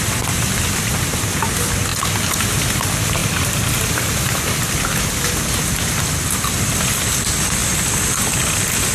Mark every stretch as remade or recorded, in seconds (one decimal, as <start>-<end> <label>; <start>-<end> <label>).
0.0-8.9 recorded